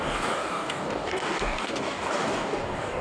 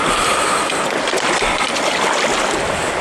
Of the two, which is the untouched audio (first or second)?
second